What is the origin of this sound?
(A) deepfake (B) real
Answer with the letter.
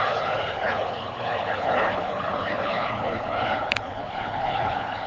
A